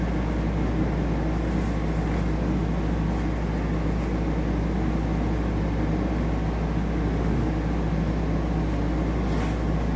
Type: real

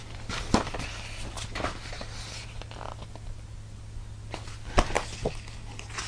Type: real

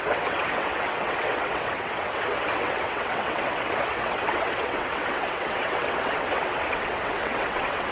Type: fake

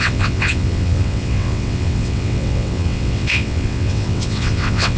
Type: fake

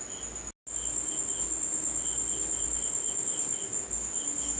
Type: real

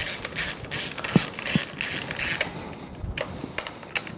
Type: real